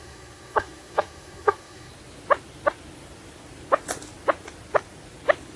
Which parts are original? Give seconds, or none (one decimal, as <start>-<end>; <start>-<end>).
1.9-5.6